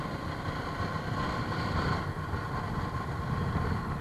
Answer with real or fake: real